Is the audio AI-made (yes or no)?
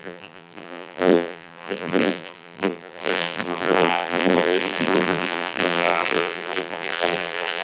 yes